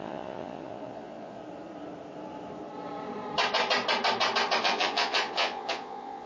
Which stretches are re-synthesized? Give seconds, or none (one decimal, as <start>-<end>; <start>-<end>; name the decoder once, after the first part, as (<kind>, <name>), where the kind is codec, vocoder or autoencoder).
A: 0.0-1.4 (vocoder, Vocos); 4.6-6.3

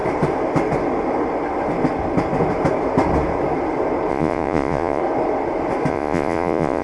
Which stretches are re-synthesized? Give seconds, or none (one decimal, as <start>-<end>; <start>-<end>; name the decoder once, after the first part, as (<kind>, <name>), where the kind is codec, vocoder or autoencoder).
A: 4.1-5.0 (vocoder, Vocos); 5.9-6.8